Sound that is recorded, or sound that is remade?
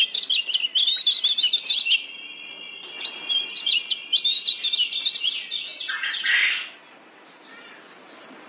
recorded